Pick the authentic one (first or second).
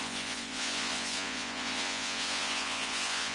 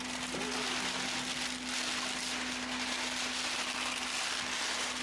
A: second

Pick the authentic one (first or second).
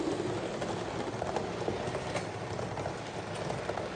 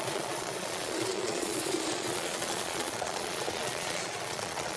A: first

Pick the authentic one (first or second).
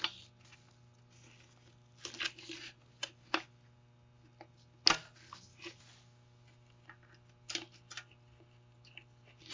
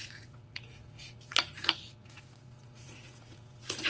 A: first